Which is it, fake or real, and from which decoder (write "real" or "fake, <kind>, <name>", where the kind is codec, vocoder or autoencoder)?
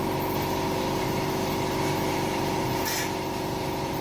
real